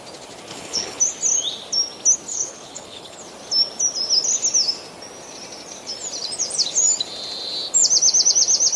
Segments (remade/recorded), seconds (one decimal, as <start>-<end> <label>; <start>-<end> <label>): 0.0-0.5 recorded; 0.5-1.0 remade; 1.0-2.3 recorded; 2.3-3.2 remade; 3.2-8.8 recorded